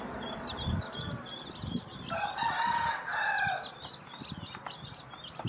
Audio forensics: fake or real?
real